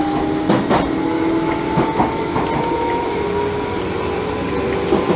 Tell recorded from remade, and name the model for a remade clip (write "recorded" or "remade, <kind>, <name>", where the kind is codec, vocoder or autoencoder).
recorded